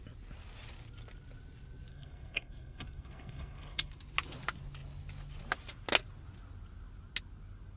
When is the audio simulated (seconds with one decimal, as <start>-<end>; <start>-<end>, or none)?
1.9-3.9